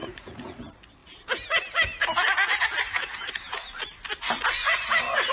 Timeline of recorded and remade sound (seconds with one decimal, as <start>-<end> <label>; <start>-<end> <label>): 0.0-0.6 remade; 0.6-5.3 recorded